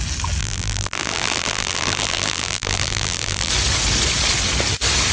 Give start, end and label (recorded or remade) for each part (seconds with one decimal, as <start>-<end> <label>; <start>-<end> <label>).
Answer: 0.0-0.4 recorded; 0.4-3.5 remade; 3.5-5.1 recorded